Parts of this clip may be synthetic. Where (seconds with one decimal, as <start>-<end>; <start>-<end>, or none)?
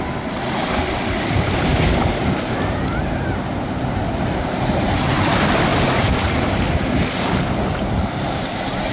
0.0-1.7; 2.2-3.0; 5.3-5.7; 6.4-8.9